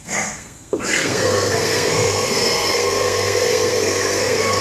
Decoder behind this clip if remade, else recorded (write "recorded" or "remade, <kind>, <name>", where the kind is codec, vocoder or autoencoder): remade, codec, SNAC